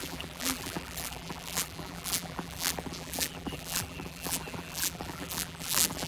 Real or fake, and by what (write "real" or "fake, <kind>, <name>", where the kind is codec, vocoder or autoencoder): fake, vocoder, BigVGAN v2